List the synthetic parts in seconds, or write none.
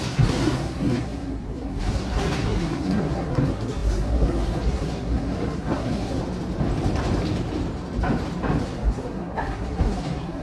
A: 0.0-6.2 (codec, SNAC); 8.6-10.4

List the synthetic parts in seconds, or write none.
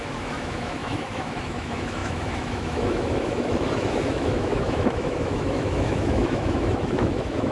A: 0.0-7.5 (autoencoder, DAC-VAE)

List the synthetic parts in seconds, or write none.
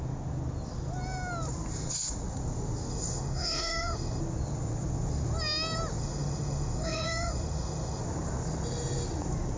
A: 2.9-4.2 (autoencoder, DAC-VAE); 6.0-8.0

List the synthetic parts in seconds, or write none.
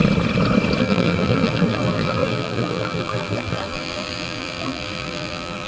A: 0.8-5.7 (vocoder, BigVGAN v2)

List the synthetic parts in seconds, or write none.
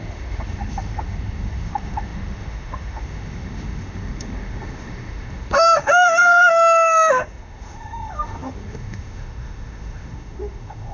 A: 0.0-10.9 (autoencoder, DAC-VAE)